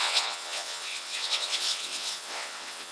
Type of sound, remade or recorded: remade